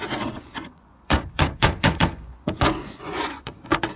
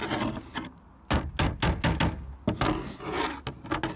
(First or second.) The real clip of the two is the second